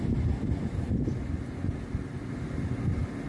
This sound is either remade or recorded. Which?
recorded